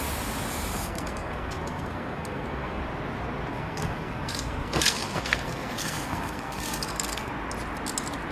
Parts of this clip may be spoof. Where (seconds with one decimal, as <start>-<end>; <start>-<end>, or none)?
0.7-2.8; 3.5-7.3